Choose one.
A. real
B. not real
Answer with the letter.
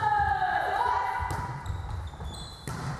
A